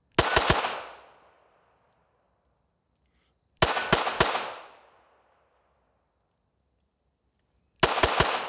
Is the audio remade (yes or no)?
no